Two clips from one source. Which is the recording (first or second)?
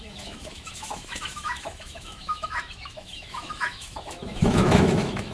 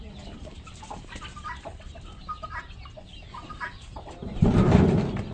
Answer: second